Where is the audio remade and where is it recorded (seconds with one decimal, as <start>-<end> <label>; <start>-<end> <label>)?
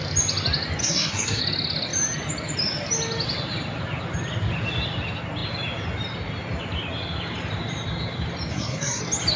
0.0-0.8 recorded; 0.8-1.4 remade; 1.4-8.5 recorded; 8.5-9.0 remade; 9.0-9.4 recorded